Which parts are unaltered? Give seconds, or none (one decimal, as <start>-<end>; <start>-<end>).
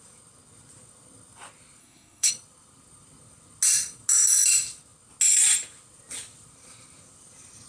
0.0-1.8; 2.3-7.7